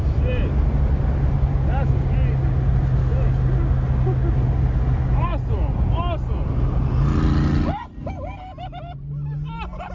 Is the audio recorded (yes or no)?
yes